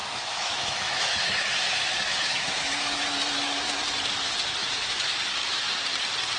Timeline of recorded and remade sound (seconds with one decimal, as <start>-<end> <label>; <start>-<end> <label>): 0.0-3.8 remade; 3.8-4.6 recorded; 4.6-5.2 remade; 5.2-6.4 recorded